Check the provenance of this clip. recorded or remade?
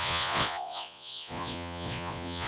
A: remade